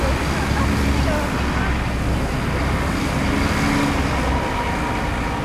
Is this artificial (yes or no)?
no